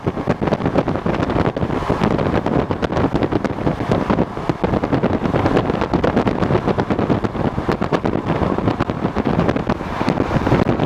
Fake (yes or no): no